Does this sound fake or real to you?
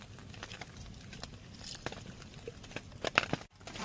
fake